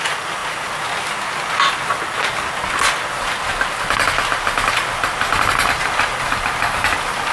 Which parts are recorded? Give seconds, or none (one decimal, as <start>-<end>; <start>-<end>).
0.0-7.3